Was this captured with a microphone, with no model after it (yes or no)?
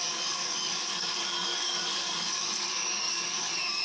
no